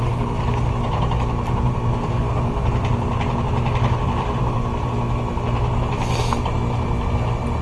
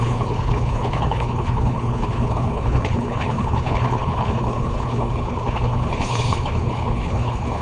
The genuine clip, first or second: first